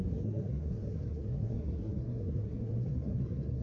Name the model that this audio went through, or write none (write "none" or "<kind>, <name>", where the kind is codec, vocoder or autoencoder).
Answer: codec, SNAC